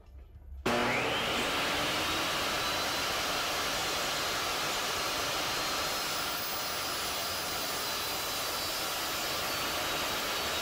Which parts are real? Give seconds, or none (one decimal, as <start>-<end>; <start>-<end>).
0.0-10.6